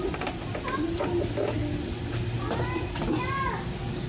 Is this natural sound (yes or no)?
yes